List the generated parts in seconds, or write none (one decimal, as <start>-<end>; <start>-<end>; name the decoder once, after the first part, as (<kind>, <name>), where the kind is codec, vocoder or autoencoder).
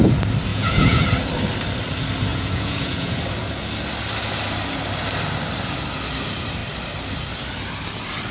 0.5-1.0 (vocoder, Vocos); 2.3-3.2